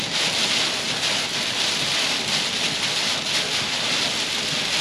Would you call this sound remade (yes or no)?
no